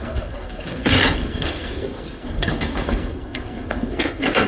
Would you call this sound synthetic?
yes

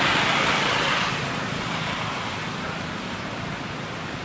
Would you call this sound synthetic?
no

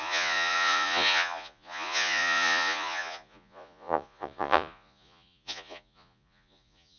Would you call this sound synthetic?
yes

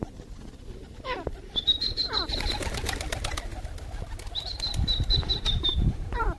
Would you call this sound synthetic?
yes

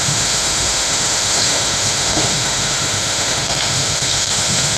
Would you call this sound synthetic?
yes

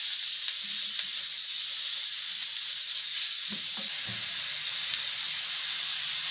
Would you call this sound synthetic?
no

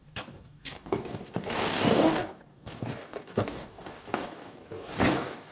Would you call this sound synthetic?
yes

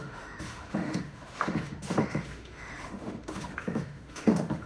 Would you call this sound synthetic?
yes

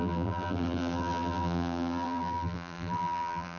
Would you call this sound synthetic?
yes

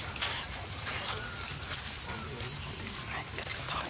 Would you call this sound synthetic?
no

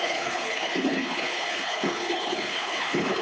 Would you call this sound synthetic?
yes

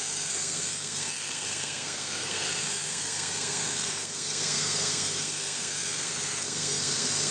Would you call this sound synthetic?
yes